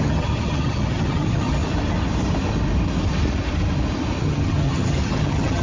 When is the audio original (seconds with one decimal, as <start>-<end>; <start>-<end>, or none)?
1.6-4.2